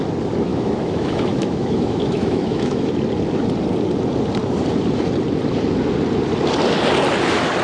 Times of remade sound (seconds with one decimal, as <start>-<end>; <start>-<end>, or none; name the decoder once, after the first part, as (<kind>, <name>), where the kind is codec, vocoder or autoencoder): 0.5-2.9 (autoencoder, DAC-VAE)

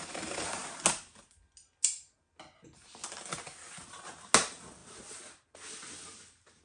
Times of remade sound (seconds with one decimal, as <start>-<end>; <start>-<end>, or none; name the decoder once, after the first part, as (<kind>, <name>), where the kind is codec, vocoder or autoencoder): none

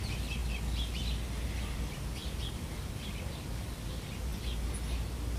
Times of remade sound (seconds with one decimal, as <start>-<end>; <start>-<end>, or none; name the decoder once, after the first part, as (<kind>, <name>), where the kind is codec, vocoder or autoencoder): none

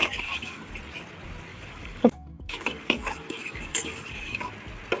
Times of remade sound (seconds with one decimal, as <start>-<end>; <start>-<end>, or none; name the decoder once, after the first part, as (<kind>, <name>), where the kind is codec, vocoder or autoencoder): 0.0-0.7 (codec, DAC); 1.5-4.5

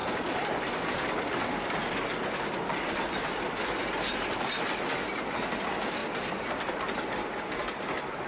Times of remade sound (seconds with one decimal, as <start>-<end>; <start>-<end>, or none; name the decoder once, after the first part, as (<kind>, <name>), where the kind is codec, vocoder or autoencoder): none